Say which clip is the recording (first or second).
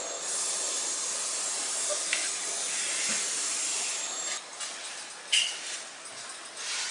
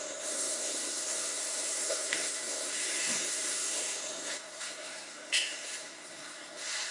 first